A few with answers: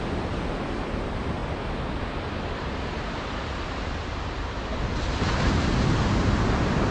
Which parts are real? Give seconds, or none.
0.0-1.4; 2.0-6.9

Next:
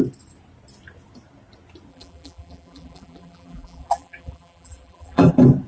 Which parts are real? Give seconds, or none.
0.0-1.9; 5.3-5.7